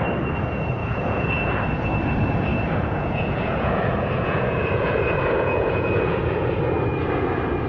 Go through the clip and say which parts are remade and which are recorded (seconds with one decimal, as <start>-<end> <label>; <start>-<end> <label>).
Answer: 0.0-0.8 recorded; 0.8-1.5 remade; 1.5-2.5 recorded; 2.5-6.6 remade; 6.6-7.7 recorded